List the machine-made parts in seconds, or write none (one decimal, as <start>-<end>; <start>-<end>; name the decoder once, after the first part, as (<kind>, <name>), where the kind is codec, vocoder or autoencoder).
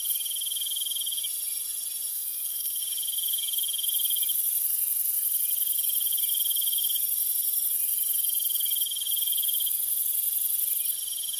2.1-2.8 (codec, SNAC)